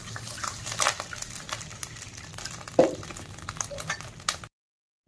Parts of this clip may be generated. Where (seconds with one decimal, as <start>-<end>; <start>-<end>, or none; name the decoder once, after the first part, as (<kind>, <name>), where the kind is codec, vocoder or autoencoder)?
none